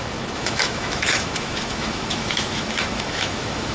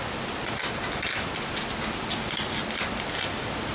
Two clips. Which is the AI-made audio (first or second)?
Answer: first